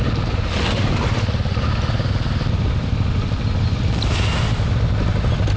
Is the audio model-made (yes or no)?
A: no